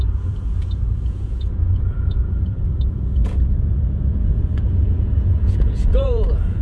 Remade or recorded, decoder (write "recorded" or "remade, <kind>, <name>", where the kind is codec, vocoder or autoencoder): remade, vocoder, Vocos